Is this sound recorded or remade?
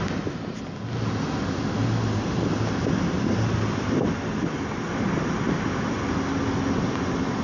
recorded